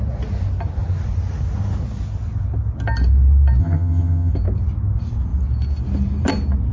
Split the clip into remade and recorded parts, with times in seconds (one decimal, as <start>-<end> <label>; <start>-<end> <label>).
0.0-3.6 recorded; 3.6-4.3 remade; 4.3-6.7 recorded